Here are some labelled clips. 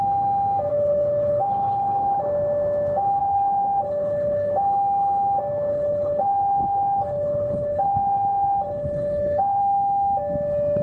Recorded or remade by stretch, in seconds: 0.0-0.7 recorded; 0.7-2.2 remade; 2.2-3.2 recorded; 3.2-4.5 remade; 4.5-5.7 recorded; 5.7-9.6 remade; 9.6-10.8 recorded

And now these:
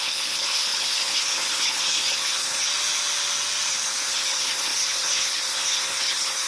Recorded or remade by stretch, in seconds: 0.0-2.7 remade; 2.7-3.7 recorded; 3.7-6.5 remade

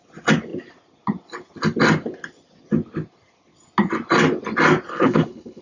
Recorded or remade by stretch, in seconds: 0.0-4.9 recorded; 4.9-5.6 remade